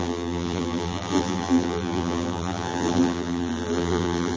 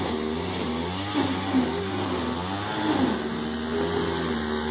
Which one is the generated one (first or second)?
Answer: first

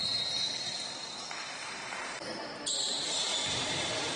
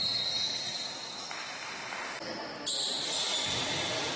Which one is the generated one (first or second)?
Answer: first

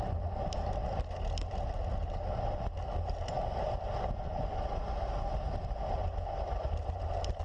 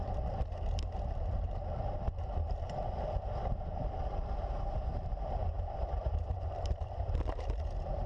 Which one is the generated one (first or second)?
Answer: second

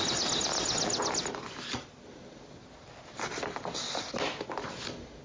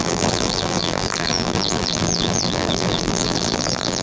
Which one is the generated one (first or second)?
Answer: second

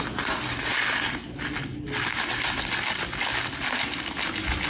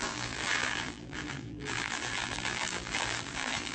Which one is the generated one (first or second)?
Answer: second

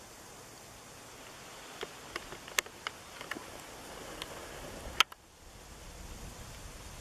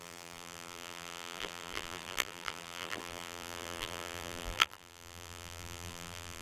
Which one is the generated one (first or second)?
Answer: second